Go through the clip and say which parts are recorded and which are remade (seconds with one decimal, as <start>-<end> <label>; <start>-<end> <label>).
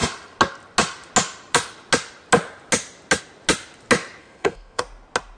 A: 0.0-4.2 recorded; 4.2-4.8 remade; 4.8-5.4 recorded